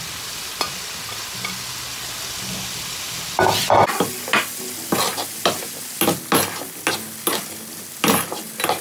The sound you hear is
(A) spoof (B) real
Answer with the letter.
B